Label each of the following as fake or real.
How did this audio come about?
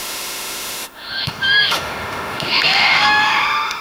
fake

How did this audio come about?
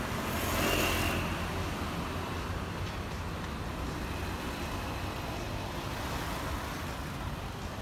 real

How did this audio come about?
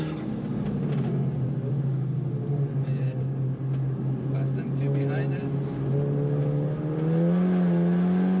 real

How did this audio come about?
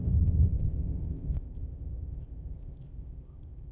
fake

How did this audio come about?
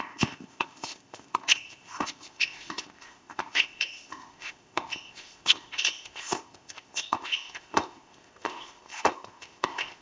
fake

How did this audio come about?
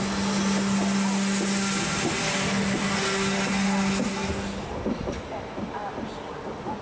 real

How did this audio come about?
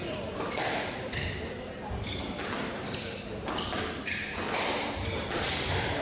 real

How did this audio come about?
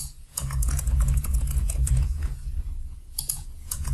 fake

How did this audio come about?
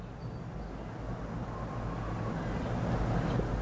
real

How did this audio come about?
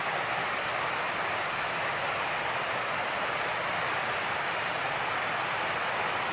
real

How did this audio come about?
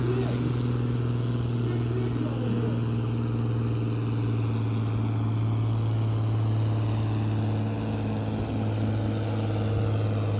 real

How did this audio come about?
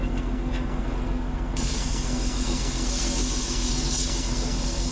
fake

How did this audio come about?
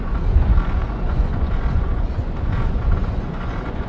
fake